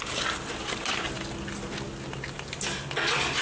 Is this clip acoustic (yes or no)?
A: yes